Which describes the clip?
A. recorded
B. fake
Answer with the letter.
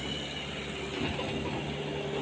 A